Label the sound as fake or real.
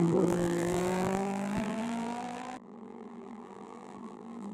fake